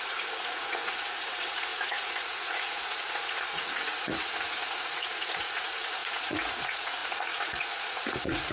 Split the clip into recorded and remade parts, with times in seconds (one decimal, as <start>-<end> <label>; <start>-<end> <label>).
0.0-8.5 remade